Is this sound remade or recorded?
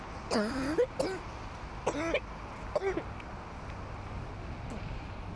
recorded